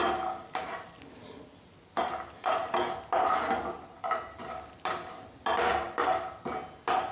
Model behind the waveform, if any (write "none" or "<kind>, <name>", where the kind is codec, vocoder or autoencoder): none